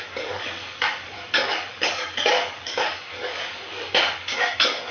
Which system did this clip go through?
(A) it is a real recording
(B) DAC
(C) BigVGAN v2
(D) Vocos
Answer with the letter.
B